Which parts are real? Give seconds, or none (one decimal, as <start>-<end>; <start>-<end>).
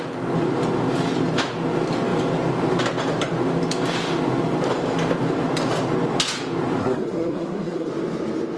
0.0-6.8; 7.9-8.6